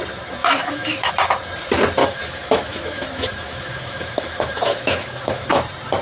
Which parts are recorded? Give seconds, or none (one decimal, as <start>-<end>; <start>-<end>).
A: 0.0-0.4; 1.1-2.0; 5.6-6.0